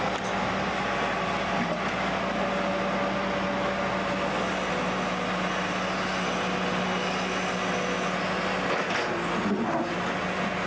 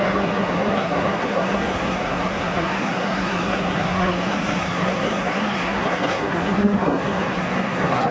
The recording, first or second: first